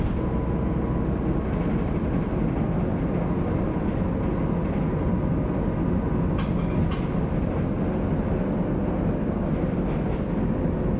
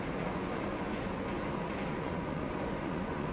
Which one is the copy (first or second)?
second